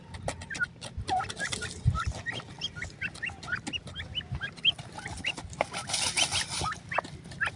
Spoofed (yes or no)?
no